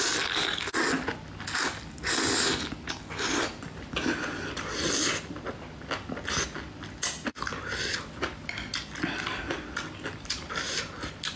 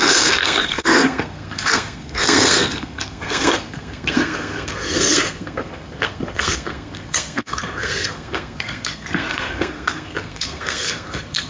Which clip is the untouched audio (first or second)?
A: first